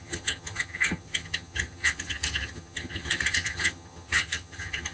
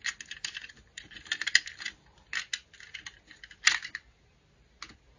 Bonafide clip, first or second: second